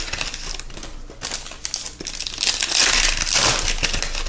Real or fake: real